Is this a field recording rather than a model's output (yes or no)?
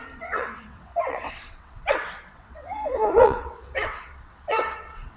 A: no